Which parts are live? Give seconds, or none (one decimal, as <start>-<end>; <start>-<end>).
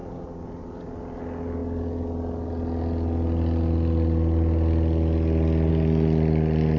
0.6-6.8